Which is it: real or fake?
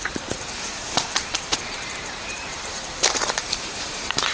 fake